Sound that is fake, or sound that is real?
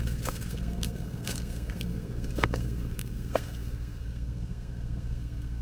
fake